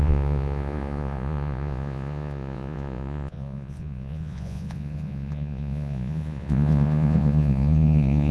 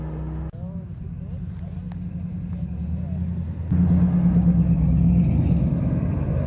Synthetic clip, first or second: first